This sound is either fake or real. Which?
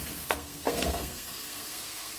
fake